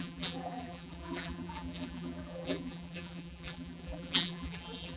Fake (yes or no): yes